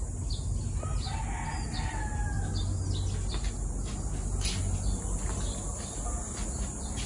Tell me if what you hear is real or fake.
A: real